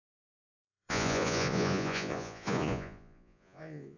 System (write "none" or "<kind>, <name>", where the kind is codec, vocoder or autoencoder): vocoder, Vocos